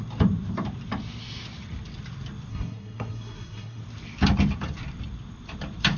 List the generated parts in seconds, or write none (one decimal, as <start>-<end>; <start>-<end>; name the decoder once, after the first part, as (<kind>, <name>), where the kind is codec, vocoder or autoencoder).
2.5-3.8 (codec, SNAC)